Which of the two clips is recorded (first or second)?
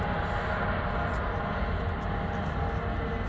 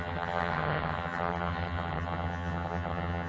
first